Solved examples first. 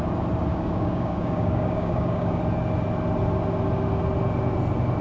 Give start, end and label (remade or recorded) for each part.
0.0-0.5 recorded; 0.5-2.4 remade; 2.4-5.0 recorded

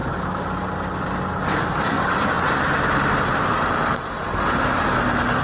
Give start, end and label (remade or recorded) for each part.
0.0-5.4 recorded

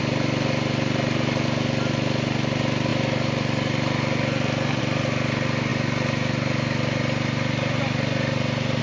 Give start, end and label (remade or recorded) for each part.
0.0-8.8 recorded

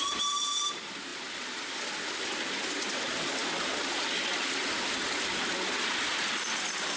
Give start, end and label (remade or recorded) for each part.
0.0-7.0 recorded